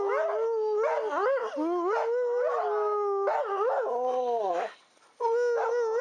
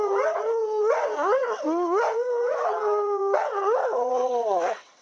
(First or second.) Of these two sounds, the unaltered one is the first